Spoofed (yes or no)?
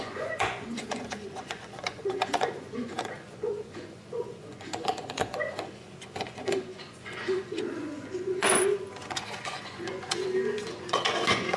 yes